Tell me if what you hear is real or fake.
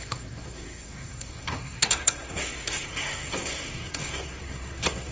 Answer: fake